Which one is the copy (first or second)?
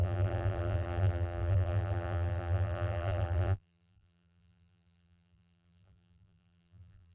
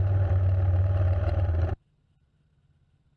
first